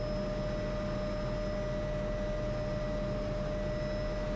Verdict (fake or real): real